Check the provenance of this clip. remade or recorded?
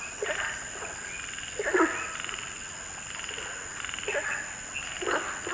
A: recorded